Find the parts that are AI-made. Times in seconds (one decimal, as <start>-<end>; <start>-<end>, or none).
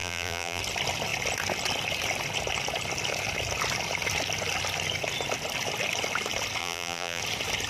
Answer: 0.0-0.6; 6.6-7.2